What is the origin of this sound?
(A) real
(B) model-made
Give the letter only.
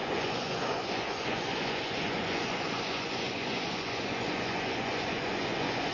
B